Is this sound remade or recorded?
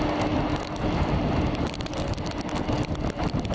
recorded